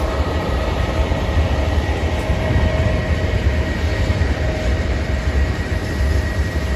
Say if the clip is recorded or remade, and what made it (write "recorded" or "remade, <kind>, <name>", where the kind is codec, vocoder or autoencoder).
remade, vocoder, BigVGAN v2